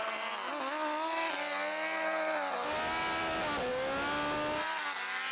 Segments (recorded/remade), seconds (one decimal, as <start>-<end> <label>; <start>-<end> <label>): 0.0-5.3 recorded